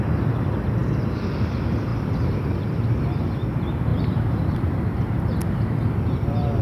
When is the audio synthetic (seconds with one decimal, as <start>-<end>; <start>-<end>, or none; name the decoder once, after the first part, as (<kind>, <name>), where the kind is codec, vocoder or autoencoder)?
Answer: 1.9-2.5 (vocoder, BigVGAN v2); 3.9-5.1